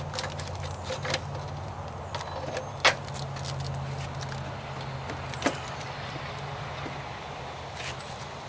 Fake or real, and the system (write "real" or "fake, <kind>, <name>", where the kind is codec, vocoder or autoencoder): real